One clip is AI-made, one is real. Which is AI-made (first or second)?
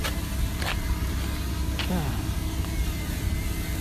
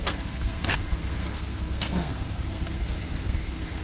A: second